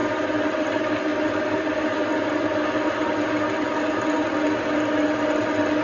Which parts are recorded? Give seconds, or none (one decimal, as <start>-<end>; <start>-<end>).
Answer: 0.0-5.8